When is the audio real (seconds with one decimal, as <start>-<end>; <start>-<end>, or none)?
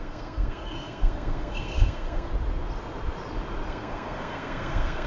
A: 2.3-3.7